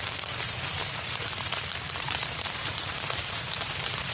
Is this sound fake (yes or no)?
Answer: yes